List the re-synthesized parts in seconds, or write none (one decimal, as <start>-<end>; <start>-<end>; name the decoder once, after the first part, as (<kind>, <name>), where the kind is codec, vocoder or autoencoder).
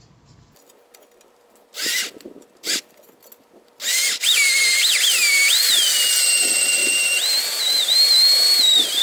none